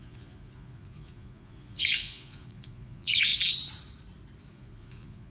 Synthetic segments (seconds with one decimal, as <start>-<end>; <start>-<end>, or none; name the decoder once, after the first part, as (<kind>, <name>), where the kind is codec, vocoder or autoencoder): 0.0-3.3 (vocoder, Vocos); 4.5-5.3